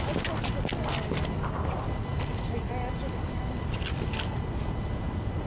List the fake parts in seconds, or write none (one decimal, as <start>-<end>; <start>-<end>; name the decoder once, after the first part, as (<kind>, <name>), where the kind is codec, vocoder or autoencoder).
none

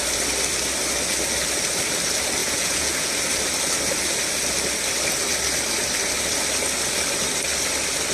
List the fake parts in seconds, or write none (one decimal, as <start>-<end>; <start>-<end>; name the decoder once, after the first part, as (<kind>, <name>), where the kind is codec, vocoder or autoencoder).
2.4-3.1 (vocoder, Vocos)

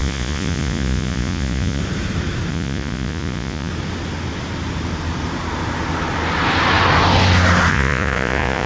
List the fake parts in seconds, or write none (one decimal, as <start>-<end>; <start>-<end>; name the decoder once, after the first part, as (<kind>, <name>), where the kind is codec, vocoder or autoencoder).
0.0-1.8 (vocoder, Vocos); 2.5-3.7; 7.7-8.7